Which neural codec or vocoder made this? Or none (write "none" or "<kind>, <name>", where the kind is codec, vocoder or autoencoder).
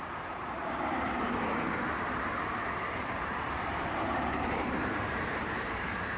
vocoder, BigVGAN v2